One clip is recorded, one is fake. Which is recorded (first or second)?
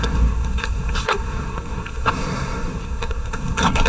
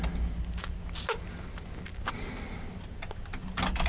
second